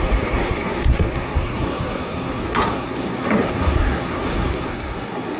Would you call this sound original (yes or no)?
no